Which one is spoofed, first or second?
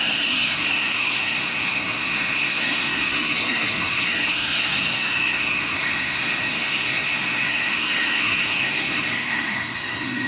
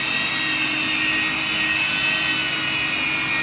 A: first